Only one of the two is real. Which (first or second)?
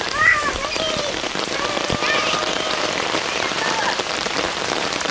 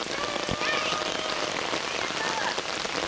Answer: second